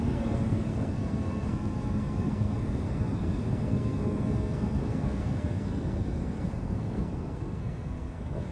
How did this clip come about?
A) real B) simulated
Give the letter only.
B